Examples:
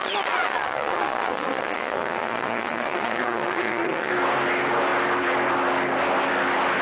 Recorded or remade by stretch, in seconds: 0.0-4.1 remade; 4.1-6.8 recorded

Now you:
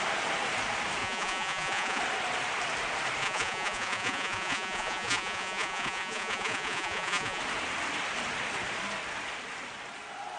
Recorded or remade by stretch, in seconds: 0.0-1.0 recorded; 1.0-2.0 remade; 2.0-3.2 recorded; 3.2-7.4 remade; 7.4-10.4 recorded

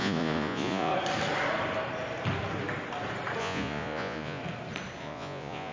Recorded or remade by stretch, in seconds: 0.0-0.9 remade; 0.9-3.4 recorded; 3.4-4.4 remade; 4.4-5.0 recorded; 5.0-5.7 remade

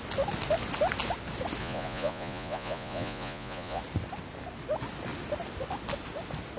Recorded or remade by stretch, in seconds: 0.0-1.6 recorded; 1.6-3.8 remade; 3.8-6.6 recorded

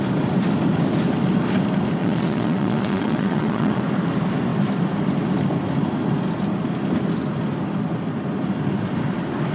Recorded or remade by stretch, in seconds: 0.0-2.0 recorded; 2.0-3.8 remade; 3.8-9.5 recorded

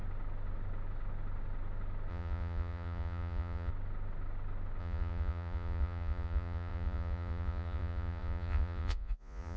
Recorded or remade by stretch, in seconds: 0.0-2.1 recorded; 2.1-3.7 remade; 3.7-4.8 recorded; 4.8-9.6 remade

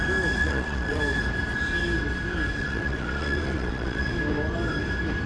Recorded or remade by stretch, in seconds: 0.0-0.4 recorded; 0.4-1.0 remade; 1.0-2.6 recorded; 2.6-4.1 remade; 4.1-5.3 recorded